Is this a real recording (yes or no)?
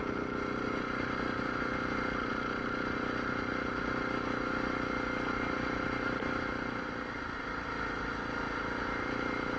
yes